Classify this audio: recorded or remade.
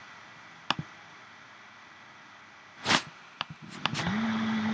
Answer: recorded